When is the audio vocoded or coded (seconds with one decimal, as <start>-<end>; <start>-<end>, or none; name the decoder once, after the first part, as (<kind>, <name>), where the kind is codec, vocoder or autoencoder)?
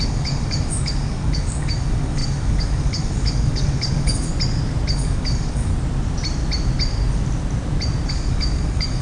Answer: 0.0-4.3 (codec, DAC); 4.9-5.7; 8.1-9.0